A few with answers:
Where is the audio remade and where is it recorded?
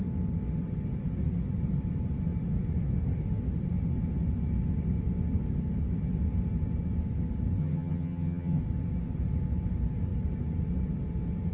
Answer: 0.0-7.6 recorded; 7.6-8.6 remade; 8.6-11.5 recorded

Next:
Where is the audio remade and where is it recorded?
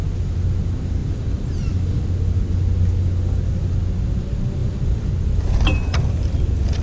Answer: 0.0-1.0 recorded; 1.0-2.1 remade; 2.1-4.6 recorded; 4.6-5.1 remade; 5.1-6.8 recorded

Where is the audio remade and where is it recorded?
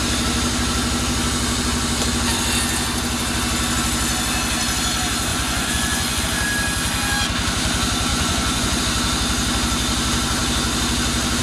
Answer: 0.0-5.3 recorded; 5.3-6.2 remade; 6.2-8.1 recorded; 8.1-8.8 remade; 8.8-11.4 recorded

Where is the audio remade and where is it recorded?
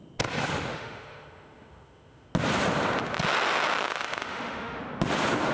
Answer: 0.0-0.7 recorded; 0.7-2.3 remade; 2.3-3.9 recorded; 3.9-4.8 remade; 4.8-5.5 recorded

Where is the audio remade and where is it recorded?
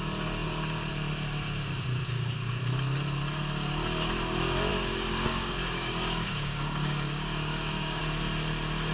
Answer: 0.0-2.0 recorded; 2.0-2.6 remade; 2.6-4.7 recorded; 4.7-8.0 remade; 8.0-8.9 recorded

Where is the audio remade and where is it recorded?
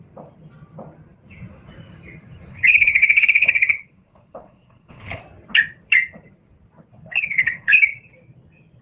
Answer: 0.0-2.5 recorded; 2.5-5.2 remade; 5.2-6.9 recorded; 6.9-8.0 remade; 8.0-8.8 recorded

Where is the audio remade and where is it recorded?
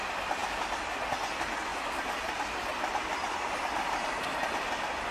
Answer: 0.0-1.7 recorded; 1.7-4.2 remade; 4.2-5.1 recorded